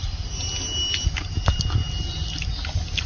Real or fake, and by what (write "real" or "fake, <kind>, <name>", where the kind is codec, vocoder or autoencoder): real